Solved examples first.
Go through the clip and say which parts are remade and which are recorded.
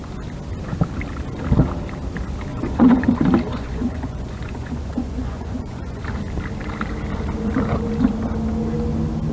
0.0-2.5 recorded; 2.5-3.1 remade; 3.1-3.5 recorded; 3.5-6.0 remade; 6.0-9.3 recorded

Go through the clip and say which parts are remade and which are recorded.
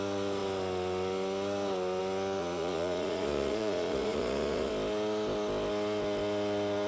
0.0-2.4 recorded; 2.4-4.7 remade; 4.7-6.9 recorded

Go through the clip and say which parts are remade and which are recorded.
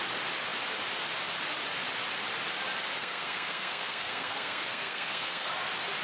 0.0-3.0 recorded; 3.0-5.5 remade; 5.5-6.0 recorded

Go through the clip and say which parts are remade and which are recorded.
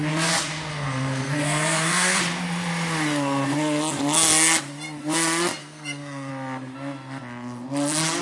0.0-0.7 recorded; 0.7-2.2 remade; 2.2-5.6 recorded; 5.6-6.3 remade; 6.3-8.2 recorded